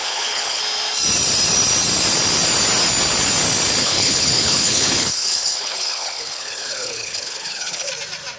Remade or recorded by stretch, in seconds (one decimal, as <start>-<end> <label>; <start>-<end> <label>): 0.0-0.6 remade; 0.6-3.8 recorded; 3.8-7.9 remade; 7.9-8.4 recorded